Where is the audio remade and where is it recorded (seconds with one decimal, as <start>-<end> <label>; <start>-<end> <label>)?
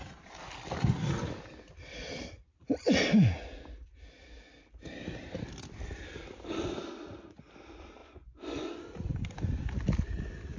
0.0-8.0 recorded; 8.0-8.8 remade; 8.8-10.6 recorded